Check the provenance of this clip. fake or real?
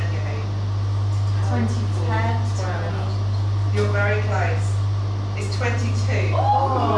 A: real